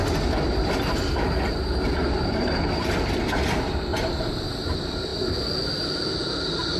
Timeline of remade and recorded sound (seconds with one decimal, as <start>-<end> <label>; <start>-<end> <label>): 0.0-3.9 recorded; 3.9-4.5 remade; 4.5-6.8 recorded